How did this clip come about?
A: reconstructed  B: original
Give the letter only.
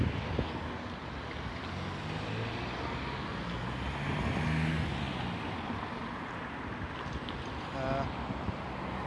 B